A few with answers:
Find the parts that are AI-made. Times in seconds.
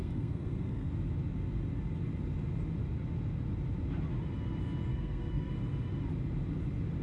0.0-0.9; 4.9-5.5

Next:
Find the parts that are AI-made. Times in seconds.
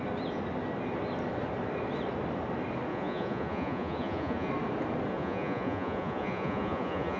2.9-4.5; 5.1-7.2